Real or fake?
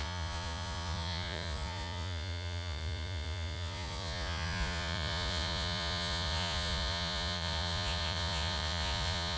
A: fake